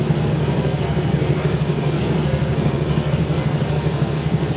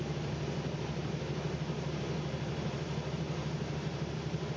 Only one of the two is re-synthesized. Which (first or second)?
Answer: first